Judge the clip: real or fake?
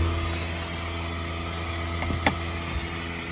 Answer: real